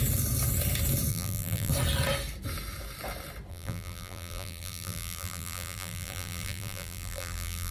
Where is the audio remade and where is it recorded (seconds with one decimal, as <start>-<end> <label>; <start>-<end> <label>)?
0.0-1.1 recorded; 1.1-1.7 remade; 1.7-3.5 recorded; 3.5-7.7 remade